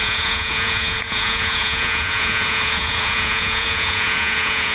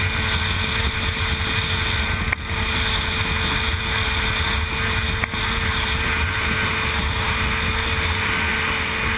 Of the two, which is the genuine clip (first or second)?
second